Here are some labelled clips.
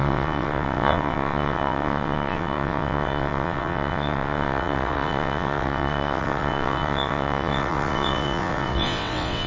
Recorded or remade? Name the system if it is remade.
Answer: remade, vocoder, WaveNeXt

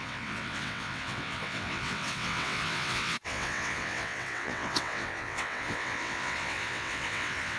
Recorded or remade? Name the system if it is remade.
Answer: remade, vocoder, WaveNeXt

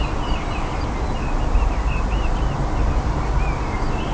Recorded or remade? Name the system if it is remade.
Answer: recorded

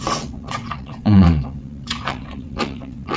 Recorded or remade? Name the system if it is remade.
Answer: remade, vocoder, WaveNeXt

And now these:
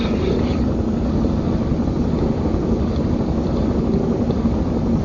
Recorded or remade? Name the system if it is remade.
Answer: recorded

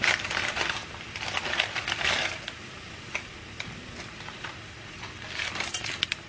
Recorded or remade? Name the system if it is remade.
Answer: recorded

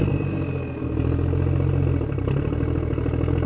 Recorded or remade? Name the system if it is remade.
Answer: recorded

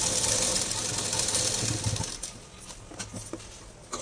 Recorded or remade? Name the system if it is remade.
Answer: recorded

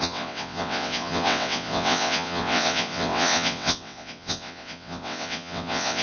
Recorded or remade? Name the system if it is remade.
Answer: remade, vocoder, WaveNeXt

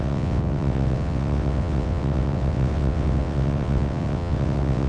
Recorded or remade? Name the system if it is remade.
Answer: remade, vocoder, WaveNeXt